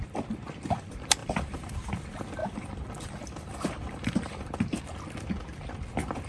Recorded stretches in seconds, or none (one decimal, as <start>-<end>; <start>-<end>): 0.0-1.2; 1.9-2.4; 4.8-6.3